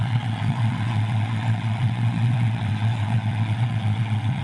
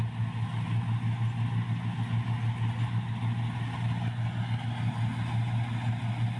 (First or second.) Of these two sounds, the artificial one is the first